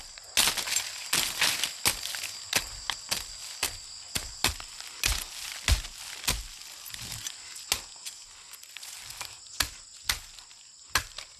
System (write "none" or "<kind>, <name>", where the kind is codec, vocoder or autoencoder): none